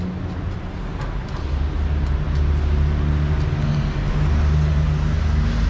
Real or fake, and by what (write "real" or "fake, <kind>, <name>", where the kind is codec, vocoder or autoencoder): real